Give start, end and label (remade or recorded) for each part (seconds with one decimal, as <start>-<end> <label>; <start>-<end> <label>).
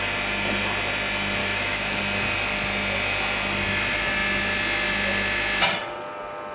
0.0-1.4 recorded; 1.4-2.0 remade; 2.0-6.5 recorded